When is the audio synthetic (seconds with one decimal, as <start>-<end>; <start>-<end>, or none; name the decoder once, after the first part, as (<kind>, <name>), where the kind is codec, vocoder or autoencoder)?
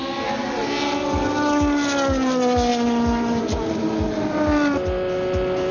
none